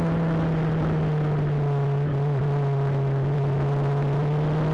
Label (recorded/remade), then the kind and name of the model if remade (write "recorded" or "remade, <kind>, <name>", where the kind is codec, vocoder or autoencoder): recorded